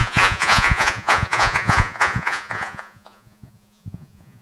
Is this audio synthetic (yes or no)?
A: yes